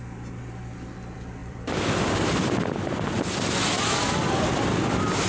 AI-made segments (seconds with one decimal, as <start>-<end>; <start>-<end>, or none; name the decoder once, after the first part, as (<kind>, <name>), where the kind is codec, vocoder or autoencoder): 1.4-4.6 (vocoder, BigVGAN v2)